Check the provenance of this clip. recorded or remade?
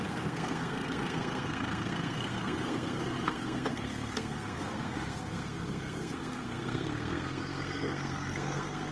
remade